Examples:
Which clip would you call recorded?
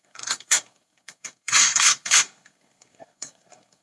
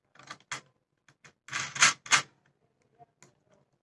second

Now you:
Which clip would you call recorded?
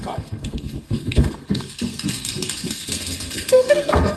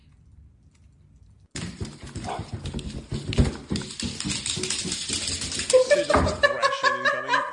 second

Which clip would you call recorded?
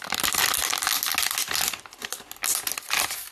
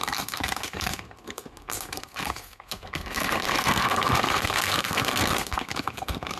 first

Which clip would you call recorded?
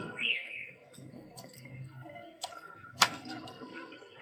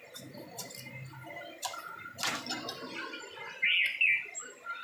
second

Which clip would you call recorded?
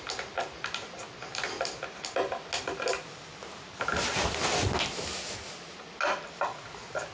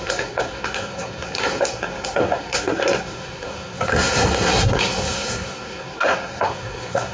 first